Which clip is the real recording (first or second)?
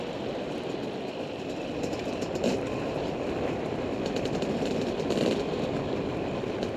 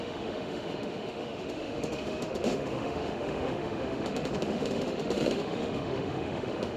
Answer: first